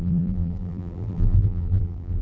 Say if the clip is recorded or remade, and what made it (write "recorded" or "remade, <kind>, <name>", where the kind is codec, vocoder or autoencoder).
remade, vocoder, BigVGAN v2